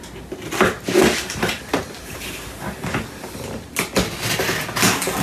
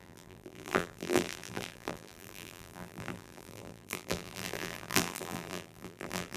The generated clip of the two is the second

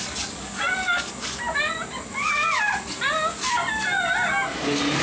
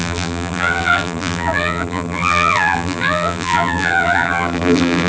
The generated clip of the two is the second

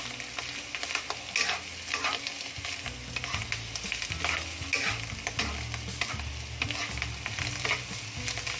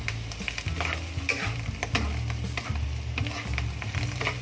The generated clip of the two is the second